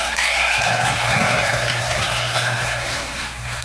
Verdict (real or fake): fake